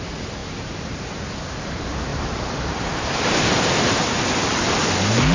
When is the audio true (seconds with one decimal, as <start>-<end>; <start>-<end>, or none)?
0.0-0.4; 1.7-2.1; 4.0-5.3